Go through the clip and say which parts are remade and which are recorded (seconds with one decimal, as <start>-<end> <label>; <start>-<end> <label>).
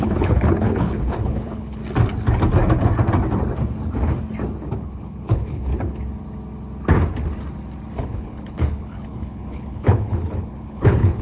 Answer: 0.0-1.8 remade; 1.8-4.8 recorded; 4.8-5.7 remade; 5.7-8.0 recorded; 8.0-11.2 remade